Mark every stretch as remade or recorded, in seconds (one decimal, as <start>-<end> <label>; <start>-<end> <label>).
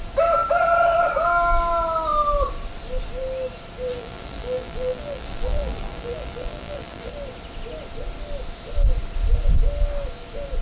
0.0-3.9 recorded; 3.9-7.1 remade; 7.1-10.6 recorded